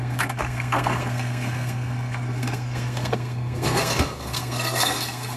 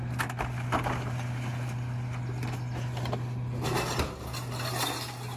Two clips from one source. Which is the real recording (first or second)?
second